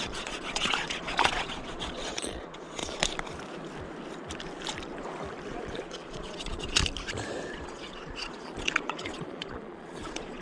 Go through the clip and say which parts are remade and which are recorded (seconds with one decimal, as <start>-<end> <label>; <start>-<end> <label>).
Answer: 0.0-2.8 remade; 2.8-5.5 recorded; 5.5-6.8 remade; 6.8-7.5 recorded; 7.5-10.4 remade